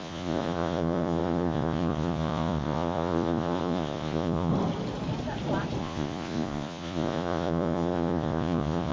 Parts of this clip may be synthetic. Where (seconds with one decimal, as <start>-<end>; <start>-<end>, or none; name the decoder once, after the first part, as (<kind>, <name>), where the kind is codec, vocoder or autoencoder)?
0.0-4.5 (vocoder, Vocos); 5.8-8.9